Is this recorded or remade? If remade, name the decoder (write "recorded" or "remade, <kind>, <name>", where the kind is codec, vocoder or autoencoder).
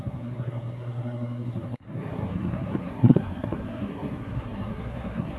remade, codec, SNAC